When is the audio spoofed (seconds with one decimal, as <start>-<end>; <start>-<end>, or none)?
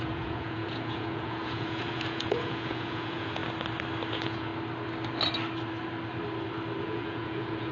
0.0-3.4; 4.1-4.5; 6.8-7.7